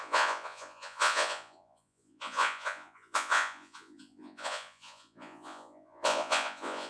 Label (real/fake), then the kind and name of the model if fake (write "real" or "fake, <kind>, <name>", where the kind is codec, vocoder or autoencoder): fake, vocoder, Vocos